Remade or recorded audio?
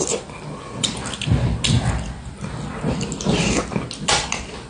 recorded